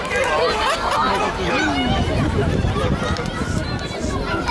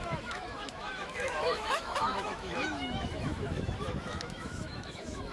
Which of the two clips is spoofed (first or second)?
second